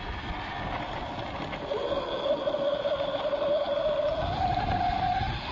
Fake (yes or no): no